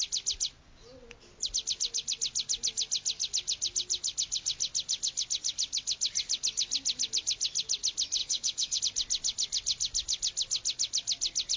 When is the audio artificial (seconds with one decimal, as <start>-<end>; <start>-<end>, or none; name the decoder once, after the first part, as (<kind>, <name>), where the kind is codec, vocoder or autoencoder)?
8.2-8.8 (vocoder, Vocos)